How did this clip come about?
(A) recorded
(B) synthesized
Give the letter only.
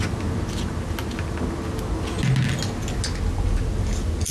A